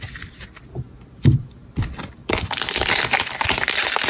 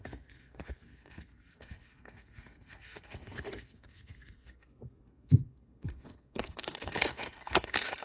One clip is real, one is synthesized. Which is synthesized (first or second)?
second